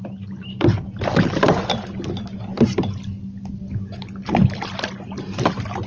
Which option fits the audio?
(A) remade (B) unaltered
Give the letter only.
B